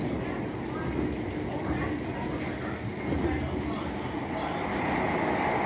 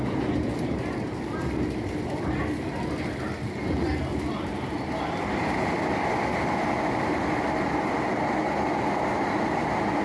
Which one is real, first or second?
first